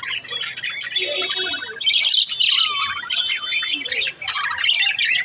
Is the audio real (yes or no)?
yes